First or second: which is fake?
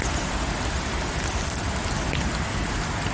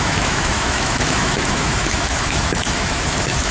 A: second